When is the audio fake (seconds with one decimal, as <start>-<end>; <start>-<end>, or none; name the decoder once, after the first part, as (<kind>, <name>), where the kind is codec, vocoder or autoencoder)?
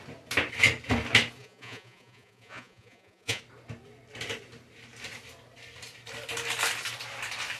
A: 1.4-3.4 (vocoder, Vocos)